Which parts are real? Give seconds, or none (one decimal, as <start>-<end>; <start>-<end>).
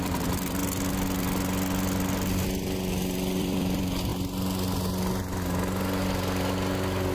0.6-3.4; 4.1-7.1